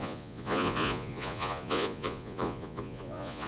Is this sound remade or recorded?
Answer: remade